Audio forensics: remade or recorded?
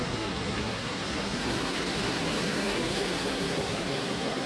remade